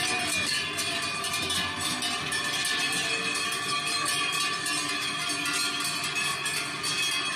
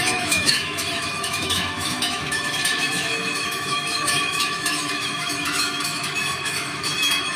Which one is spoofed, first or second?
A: second